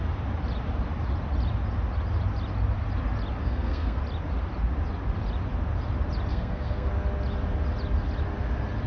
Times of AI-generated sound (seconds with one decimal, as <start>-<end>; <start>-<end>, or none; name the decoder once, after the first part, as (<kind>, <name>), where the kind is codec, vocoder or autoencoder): 3.4-4.0 (codec, SNAC); 6.3-6.9